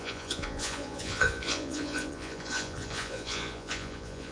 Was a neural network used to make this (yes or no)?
yes